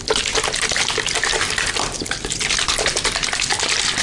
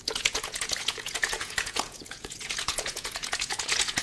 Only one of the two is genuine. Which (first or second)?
first